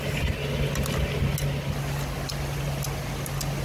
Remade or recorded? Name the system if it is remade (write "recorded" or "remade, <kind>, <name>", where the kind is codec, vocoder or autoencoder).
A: recorded